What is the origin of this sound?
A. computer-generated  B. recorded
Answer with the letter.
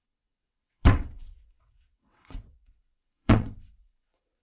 A